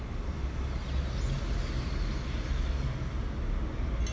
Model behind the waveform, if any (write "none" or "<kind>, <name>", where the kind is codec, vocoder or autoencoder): none